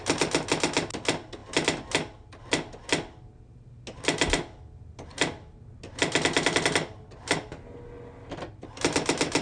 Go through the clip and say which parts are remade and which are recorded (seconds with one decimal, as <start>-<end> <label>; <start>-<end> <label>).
0.0-9.4 recorded